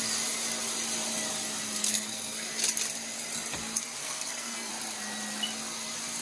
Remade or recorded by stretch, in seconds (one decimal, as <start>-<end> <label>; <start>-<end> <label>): 0.0-1.8 recorded; 1.8-2.5 remade; 2.5-4.0 recorded; 4.0-4.7 remade; 4.7-6.2 recorded